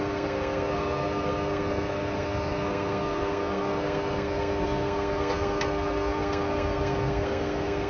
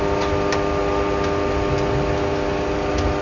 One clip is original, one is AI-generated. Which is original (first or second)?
second